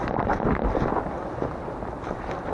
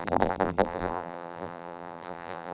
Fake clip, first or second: second